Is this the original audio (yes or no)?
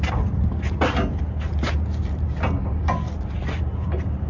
yes